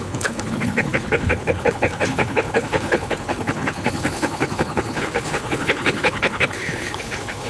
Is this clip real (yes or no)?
no